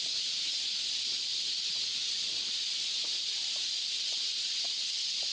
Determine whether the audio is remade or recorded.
recorded